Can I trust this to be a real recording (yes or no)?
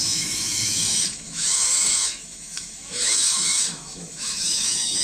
no